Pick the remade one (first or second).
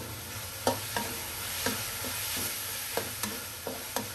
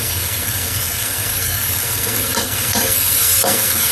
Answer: second